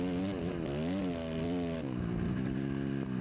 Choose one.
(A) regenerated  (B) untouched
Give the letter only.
B